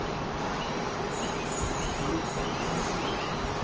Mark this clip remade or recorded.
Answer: recorded